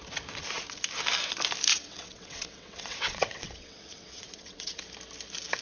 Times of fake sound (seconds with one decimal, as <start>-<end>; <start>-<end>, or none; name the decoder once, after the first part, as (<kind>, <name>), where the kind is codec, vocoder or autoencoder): 1.7-4.8 (vocoder, WaveNeXt)